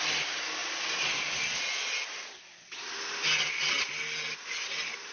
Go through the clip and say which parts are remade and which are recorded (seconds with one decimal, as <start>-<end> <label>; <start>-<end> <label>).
0.0-5.1 recorded